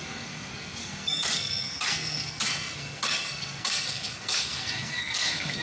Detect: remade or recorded remade